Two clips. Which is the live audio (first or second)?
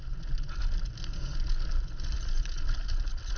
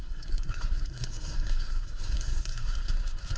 first